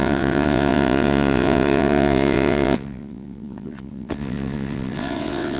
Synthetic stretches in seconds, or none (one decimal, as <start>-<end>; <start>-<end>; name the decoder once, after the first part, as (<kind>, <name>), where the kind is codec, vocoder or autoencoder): 0.0-5.6 (vocoder, WaveNeXt)